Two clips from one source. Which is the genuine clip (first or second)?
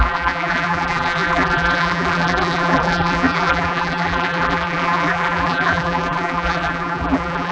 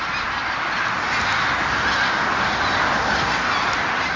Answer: second